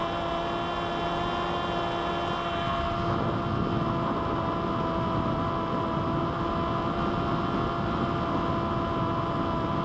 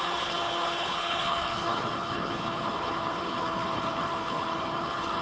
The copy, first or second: second